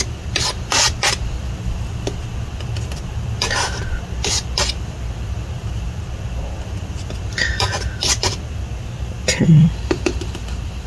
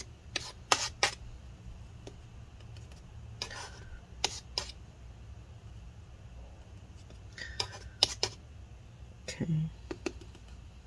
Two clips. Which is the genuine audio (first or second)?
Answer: second